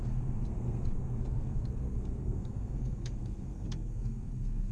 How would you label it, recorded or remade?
remade